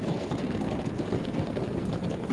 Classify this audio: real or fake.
fake